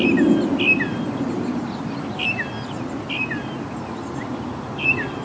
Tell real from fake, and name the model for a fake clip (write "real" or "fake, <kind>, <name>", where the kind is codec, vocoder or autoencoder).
real